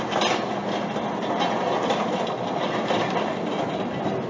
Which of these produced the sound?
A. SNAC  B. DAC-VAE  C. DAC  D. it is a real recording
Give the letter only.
D